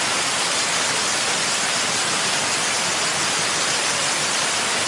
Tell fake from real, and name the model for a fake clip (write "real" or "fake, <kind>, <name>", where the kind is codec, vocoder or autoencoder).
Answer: real